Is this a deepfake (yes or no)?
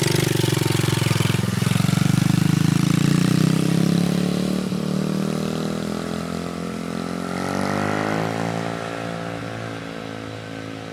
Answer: no